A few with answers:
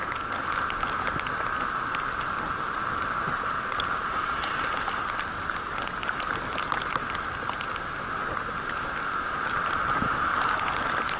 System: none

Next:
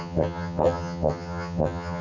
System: vocoder, HiFi-GAN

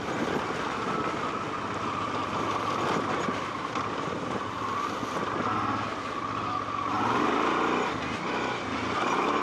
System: none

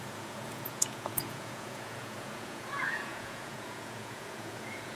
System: vocoder, Vocos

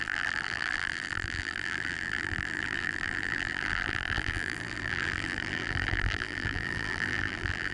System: vocoder, BigVGAN v2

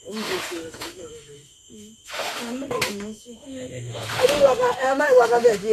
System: autoencoder, DAC-VAE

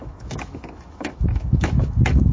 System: autoencoder, DAC-VAE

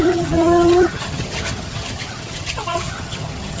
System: vocoder, HiFi-GAN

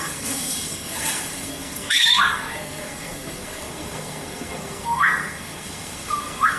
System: codec, SNAC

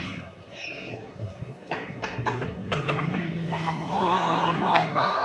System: codec, SNAC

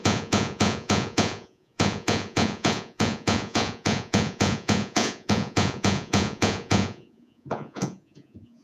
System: vocoder, Vocos